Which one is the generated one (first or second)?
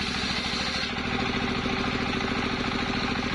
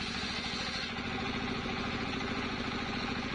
second